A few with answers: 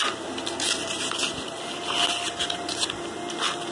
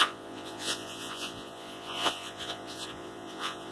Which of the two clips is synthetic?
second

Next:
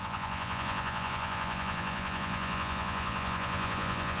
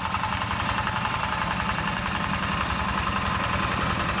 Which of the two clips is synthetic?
first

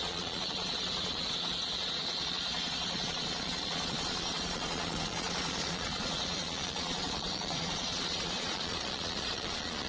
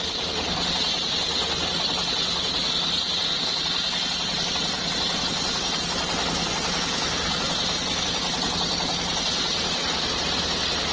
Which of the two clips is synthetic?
first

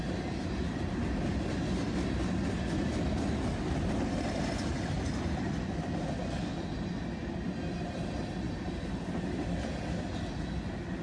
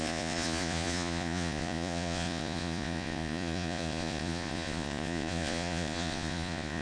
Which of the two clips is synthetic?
second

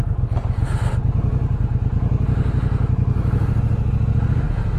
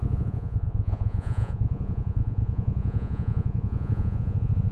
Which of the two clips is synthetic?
second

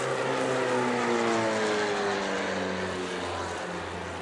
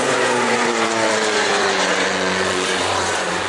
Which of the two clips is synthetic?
second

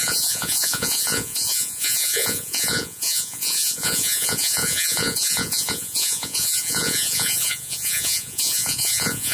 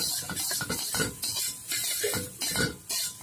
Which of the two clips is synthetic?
first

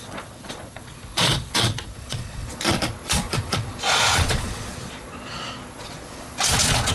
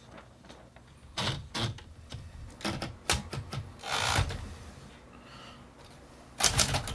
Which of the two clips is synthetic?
first